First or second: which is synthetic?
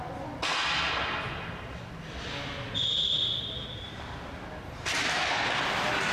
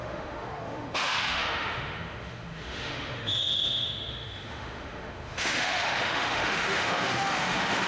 second